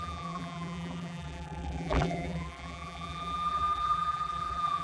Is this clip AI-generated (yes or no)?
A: yes